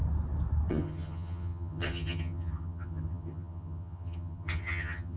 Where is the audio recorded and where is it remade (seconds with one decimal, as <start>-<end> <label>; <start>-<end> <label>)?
0.0-0.7 recorded; 0.7-5.2 remade